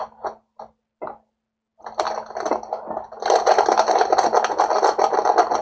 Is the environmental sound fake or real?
real